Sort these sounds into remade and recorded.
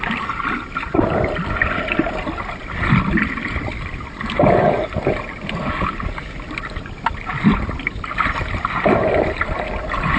remade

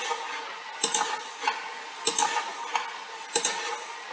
recorded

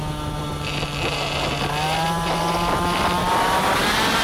recorded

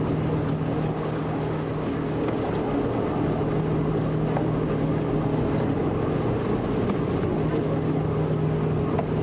recorded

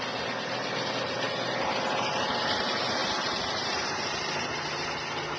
recorded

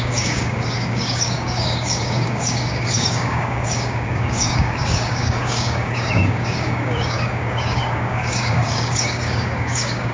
remade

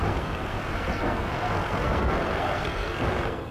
remade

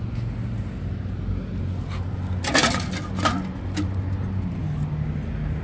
recorded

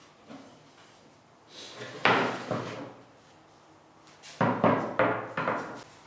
recorded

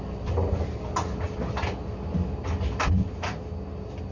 recorded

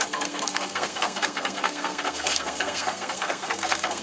remade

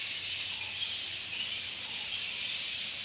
recorded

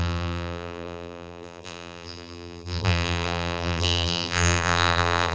remade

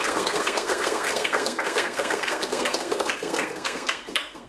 remade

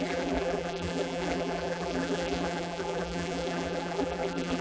remade